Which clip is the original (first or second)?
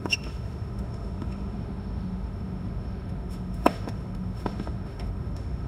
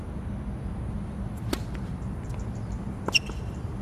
second